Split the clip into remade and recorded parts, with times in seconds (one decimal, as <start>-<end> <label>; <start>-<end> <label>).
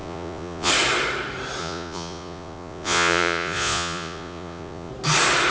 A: 0.0-0.7 remade; 0.7-1.6 recorded; 1.6-4.9 remade; 4.9-5.5 recorded